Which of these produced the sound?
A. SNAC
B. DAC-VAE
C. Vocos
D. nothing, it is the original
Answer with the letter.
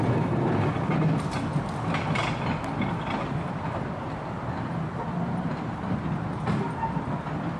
D